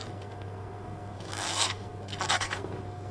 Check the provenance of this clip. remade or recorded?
remade